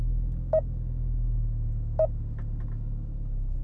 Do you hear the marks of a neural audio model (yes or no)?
no